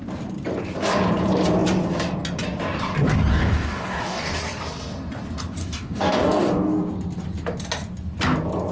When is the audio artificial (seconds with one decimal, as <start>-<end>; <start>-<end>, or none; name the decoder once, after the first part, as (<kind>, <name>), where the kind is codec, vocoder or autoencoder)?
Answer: 3.3-4.4 (codec, DAC); 5.6-6.9